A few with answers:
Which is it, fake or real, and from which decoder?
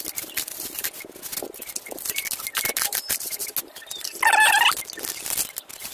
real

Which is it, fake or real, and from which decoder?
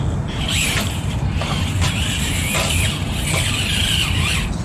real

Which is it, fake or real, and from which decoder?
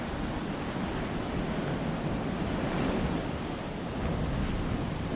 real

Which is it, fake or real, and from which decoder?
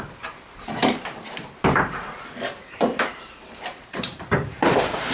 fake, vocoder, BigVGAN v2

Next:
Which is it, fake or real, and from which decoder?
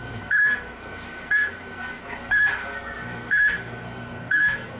fake, codec, SNAC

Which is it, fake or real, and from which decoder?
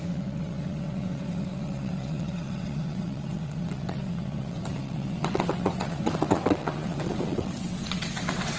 fake, vocoder, WaveNeXt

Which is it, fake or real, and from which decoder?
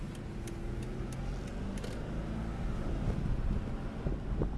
real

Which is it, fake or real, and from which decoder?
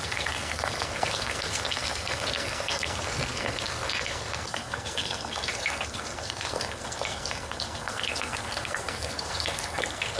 fake, codec, SNAC